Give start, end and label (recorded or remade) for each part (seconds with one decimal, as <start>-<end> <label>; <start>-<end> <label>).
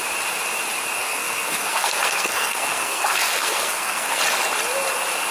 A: 0.0-1.0 recorded; 1.0-4.2 remade; 4.2-5.3 recorded